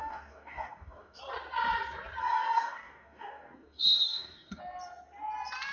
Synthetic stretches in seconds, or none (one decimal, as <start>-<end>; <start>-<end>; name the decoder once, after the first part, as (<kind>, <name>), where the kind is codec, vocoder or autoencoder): 0.0-1.2 (codec, DAC); 2.2-4.6